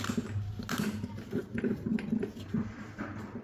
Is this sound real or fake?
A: real